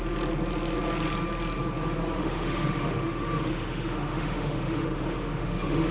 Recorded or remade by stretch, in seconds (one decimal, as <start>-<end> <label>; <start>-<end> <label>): 0.0-2.2 recorded; 2.2-5.9 remade